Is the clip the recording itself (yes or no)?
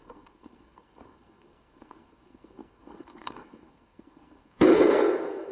no